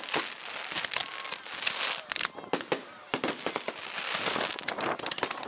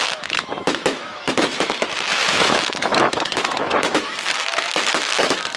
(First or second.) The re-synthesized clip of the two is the second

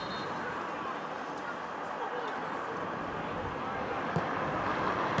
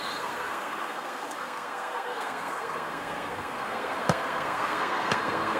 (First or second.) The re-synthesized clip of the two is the second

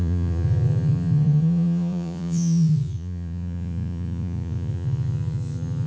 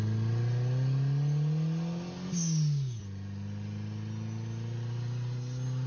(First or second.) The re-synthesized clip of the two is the first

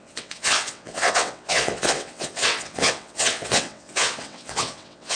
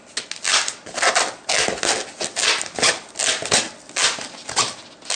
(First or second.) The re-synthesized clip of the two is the first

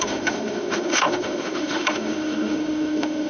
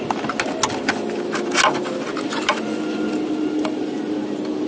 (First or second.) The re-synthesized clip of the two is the first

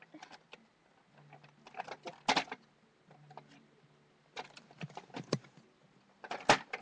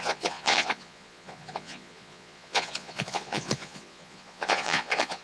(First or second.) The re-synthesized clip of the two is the second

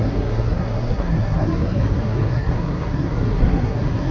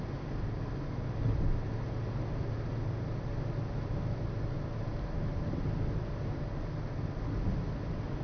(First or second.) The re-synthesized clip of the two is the first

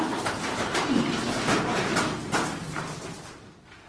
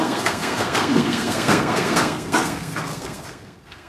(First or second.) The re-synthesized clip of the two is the second